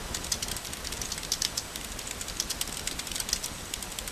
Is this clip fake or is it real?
real